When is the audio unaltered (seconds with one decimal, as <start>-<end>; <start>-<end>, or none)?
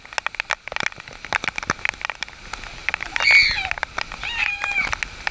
0.0-5.3